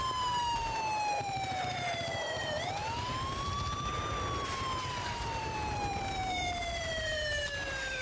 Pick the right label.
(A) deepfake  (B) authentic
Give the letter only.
A